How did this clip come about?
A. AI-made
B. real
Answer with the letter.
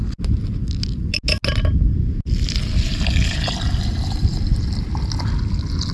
B